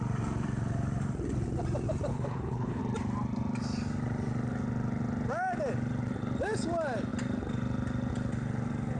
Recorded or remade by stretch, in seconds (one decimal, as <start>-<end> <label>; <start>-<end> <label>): 0.0-2.1 recorded; 2.1-2.8 remade; 2.8-9.0 recorded